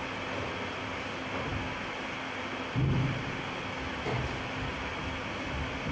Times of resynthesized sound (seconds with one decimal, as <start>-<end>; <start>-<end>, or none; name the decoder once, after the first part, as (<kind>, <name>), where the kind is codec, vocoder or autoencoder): none